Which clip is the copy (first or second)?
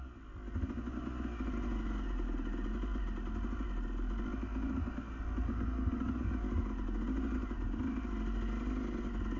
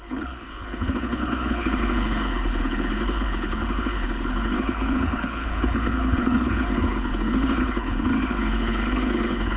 second